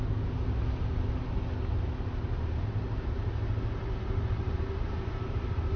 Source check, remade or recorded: recorded